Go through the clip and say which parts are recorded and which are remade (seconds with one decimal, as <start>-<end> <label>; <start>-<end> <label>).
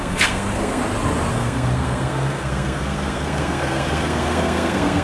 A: 0.0-0.8 remade; 0.8-1.3 recorded; 1.3-5.0 remade